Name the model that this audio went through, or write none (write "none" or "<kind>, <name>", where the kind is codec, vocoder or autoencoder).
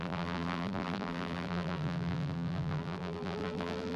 vocoder, BigVGAN v2